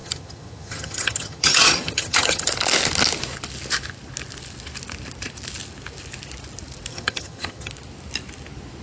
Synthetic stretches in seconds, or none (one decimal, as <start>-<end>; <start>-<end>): 0.0-2.5; 6.9-7.7